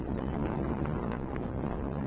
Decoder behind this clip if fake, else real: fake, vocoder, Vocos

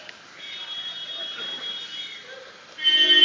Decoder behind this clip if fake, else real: real